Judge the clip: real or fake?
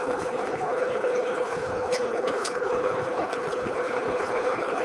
fake